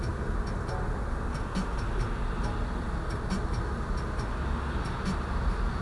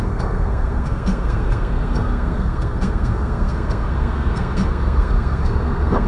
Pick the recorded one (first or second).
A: first